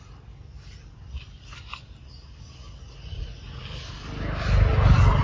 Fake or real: real